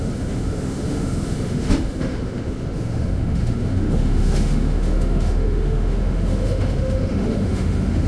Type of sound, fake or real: fake